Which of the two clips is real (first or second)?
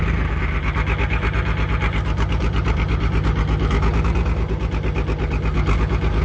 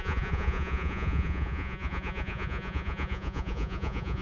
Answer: first